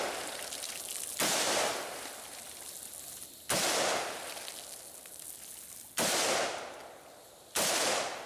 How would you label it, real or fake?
real